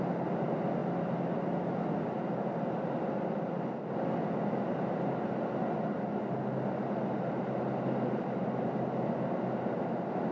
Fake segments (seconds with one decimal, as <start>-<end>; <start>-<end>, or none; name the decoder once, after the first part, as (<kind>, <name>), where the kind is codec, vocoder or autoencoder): none